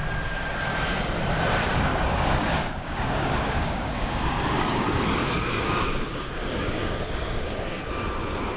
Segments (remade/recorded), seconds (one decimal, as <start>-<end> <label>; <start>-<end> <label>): 0.0-1.9 recorded; 1.9-4.8 remade; 4.8-5.2 recorded; 5.2-7.8 remade; 7.8-8.6 recorded